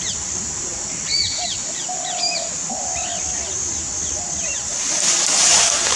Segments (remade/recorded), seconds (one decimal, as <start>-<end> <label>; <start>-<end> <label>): 0.0-6.0 recorded